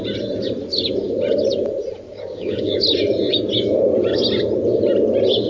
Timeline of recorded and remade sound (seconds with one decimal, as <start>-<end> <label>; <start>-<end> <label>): 0.0-2.1 recorded; 2.1-2.7 remade; 2.7-5.5 recorded